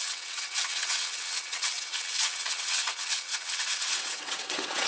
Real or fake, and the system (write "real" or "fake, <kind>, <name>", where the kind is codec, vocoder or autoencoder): fake, vocoder, WaveNeXt